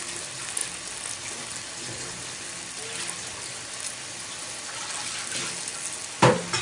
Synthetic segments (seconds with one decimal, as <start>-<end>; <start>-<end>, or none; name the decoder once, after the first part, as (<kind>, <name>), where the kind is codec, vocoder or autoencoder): none